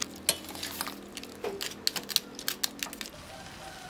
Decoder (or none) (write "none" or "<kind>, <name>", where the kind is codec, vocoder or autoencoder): none